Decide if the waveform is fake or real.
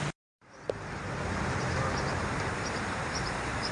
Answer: fake